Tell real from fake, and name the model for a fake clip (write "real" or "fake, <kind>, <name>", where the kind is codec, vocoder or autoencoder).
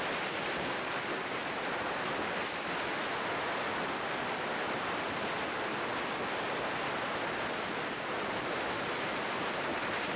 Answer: real